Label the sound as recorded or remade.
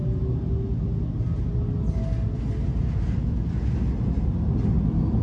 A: recorded